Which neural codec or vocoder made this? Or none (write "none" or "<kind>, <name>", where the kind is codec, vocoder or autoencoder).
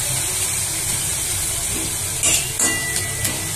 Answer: none